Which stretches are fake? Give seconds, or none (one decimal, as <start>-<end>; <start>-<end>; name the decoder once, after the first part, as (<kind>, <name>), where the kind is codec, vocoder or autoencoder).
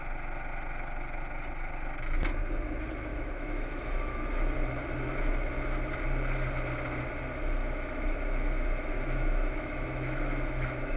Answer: 3.1-4.2 (autoencoder, DAC-VAE); 7.6-11.0